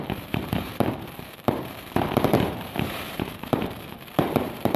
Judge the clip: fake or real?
fake